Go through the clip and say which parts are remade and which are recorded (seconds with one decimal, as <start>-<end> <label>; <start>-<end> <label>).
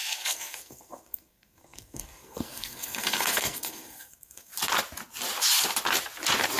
0.0-4.5 remade; 4.5-6.6 recorded